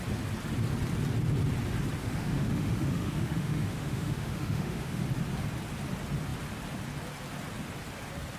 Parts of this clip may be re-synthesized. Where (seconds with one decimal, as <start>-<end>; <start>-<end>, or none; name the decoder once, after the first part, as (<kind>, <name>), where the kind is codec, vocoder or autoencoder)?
2.0-5.0 (autoencoder, DAC-VAE)